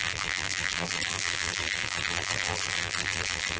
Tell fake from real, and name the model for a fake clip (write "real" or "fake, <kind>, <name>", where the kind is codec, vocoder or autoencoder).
fake, vocoder, BigVGAN v2